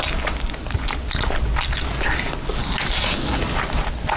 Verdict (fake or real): real